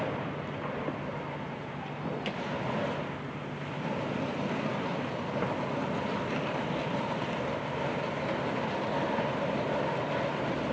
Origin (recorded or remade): recorded